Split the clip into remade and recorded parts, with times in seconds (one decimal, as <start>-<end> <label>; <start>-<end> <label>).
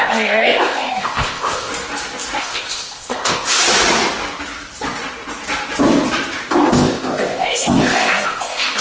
0.0-1.7 remade; 1.7-2.4 recorded; 2.4-3.6 remade; 3.6-6.7 recorded; 6.7-8.8 remade